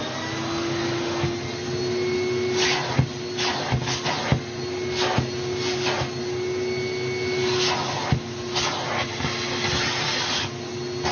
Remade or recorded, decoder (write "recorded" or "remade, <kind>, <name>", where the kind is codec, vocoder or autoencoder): recorded